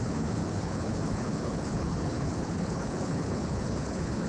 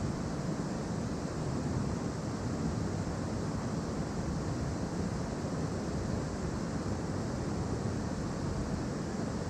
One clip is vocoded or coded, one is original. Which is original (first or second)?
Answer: second